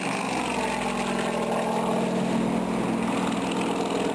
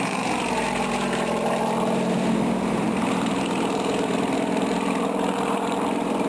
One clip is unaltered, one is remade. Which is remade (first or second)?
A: second